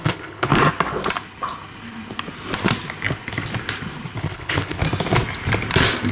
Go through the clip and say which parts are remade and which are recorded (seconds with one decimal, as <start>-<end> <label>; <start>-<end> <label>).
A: 0.0-0.5 remade; 0.5-4.2 recorded; 4.2-4.8 remade; 4.8-6.1 recorded